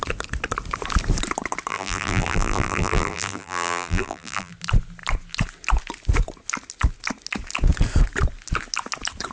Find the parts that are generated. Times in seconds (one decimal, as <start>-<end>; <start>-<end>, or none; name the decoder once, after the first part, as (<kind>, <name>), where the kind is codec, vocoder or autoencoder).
1.7-4.5 (vocoder, BigVGAN v2)